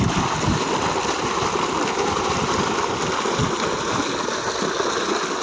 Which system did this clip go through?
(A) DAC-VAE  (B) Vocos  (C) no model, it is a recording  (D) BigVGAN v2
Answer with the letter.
C